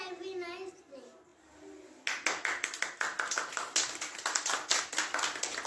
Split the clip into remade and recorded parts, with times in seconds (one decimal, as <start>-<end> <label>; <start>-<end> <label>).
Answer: 0.0-5.7 recorded